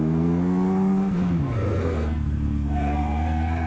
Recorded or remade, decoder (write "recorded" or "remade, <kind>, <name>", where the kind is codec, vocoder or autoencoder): remade, codec, SNAC